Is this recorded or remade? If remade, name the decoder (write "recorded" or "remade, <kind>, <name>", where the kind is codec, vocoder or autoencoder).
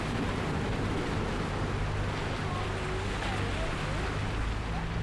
recorded